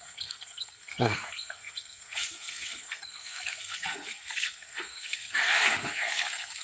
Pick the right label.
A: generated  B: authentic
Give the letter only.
A